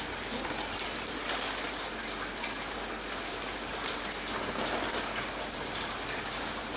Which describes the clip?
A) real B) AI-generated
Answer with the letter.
A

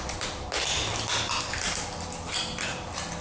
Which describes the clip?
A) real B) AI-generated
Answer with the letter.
A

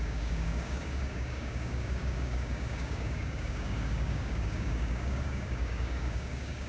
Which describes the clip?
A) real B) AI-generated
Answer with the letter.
B